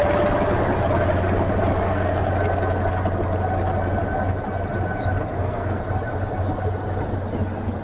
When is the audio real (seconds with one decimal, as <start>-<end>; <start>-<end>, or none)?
0.0-1.7; 2.3-5.3; 5.8-7.8